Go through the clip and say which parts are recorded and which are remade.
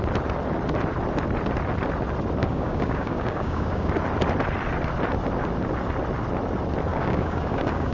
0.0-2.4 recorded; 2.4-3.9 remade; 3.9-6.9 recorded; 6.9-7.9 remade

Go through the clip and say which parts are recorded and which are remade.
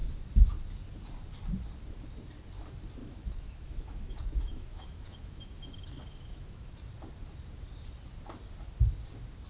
0.0-3.0 recorded; 3.0-6.9 remade; 6.9-9.5 recorded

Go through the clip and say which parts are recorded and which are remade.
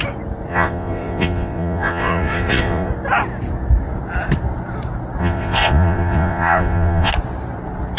0.0-0.5 recorded; 0.5-2.9 remade; 2.9-5.2 recorded; 5.2-7.1 remade; 7.1-8.0 recorded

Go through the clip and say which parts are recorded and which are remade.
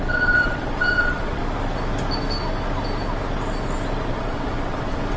0.0-1.4 remade; 1.4-4.1 recorded; 4.1-5.2 remade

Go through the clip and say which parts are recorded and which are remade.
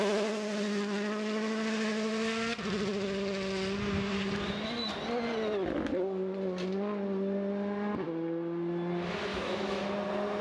0.0-9.3 recorded; 9.3-9.8 remade; 9.8-10.4 recorded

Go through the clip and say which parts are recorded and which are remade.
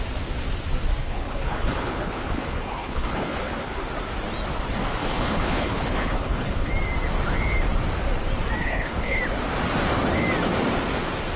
0.0-1.0 recorded; 1.0-3.7 remade; 3.7-5.0 recorded; 5.0-6.7 remade; 6.7-8.6 recorded; 8.6-9.2 remade; 9.2-11.4 recorded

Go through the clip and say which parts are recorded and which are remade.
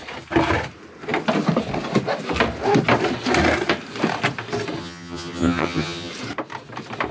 0.0-4.8 recorded; 4.8-6.1 remade; 6.1-7.1 recorded